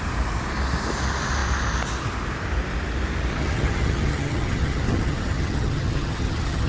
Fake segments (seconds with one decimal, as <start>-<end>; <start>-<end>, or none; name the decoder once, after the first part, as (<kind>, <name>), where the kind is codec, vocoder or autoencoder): 3.3-6.7 (vocoder, HiFi-GAN)